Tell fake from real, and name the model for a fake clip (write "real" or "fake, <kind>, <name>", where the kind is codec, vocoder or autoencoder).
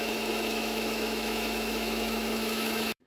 fake, autoencoder, DAC-VAE